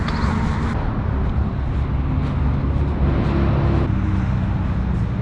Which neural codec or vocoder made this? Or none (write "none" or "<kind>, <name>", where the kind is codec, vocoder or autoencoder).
none